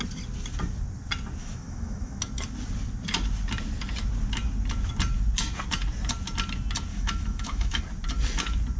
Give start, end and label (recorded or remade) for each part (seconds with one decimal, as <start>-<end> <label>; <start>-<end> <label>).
0.0-1.4 recorded; 1.4-2.2 remade; 2.2-6.9 recorded; 6.9-7.8 remade; 7.8-8.8 recorded